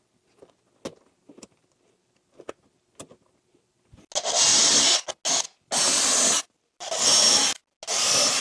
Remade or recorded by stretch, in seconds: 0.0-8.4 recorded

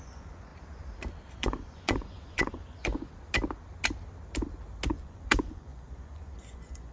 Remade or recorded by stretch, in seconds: 0.0-0.5 remade; 0.5-1.3 recorded; 1.3-3.1 remade; 3.1-4.9 recorded; 4.9-6.9 remade

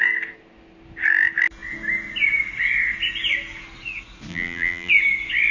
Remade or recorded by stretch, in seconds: 0.0-4.3 recorded; 4.3-4.9 remade; 4.9-5.5 recorded

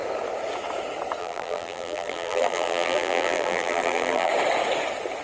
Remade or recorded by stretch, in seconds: 0.0-1.2 recorded; 1.2-4.3 remade; 4.3-5.2 recorded

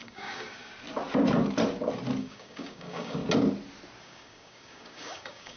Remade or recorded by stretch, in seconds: 0.0-0.7 remade; 0.7-2.2 recorded; 2.2-3.2 remade; 3.2-4.0 recorded; 4.0-5.6 remade

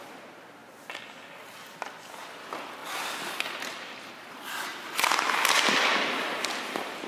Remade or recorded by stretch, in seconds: 0.0-0.6 remade; 0.6-2.4 recorded; 2.4-4.7 remade; 4.7-5.8 recorded; 5.8-7.1 remade